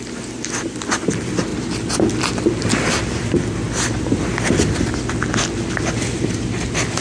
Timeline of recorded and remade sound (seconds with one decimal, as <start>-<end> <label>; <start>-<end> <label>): 0.0-7.0 recorded